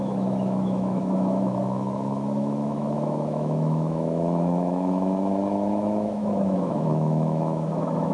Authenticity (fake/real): fake